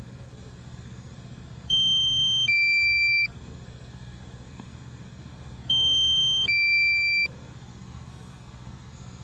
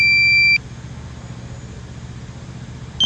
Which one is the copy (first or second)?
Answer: first